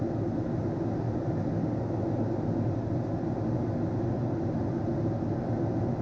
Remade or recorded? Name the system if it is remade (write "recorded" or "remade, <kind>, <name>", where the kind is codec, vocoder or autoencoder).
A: recorded